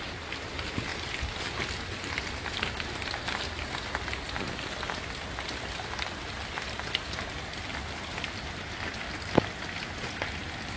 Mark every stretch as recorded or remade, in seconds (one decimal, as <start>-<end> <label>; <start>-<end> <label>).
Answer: 0.0-10.8 recorded